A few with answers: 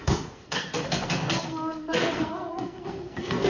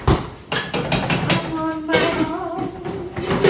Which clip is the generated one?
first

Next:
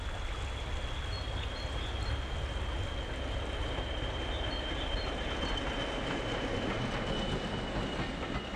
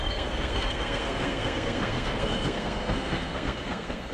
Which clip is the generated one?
second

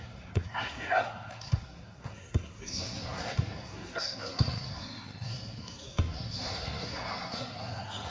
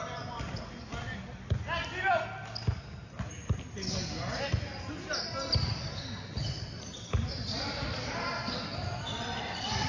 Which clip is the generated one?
first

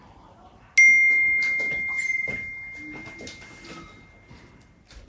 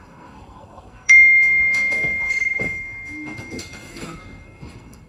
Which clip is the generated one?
second